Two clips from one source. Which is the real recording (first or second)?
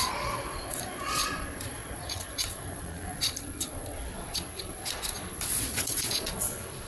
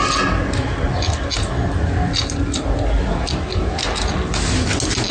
second